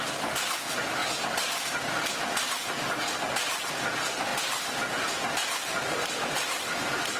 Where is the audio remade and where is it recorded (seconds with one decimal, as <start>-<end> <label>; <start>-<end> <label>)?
0.0-4.3 recorded; 4.3-7.2 remade